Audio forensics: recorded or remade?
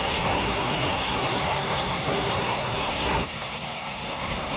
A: remade